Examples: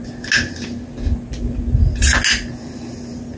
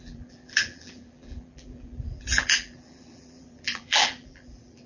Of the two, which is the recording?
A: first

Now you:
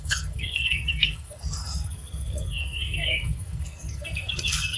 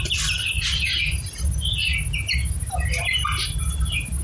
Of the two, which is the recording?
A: second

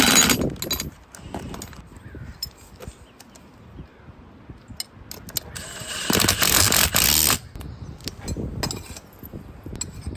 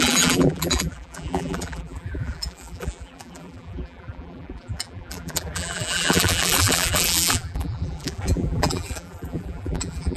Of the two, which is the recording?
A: first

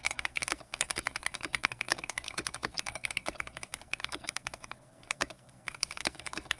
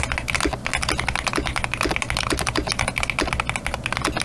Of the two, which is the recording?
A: second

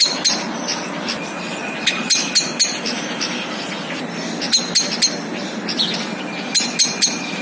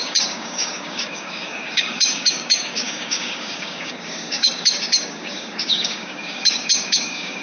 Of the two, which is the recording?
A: first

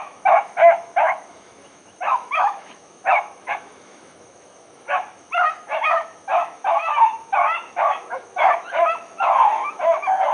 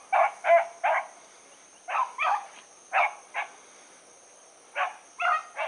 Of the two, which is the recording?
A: second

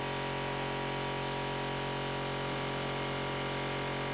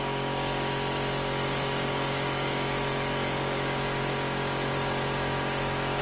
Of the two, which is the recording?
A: first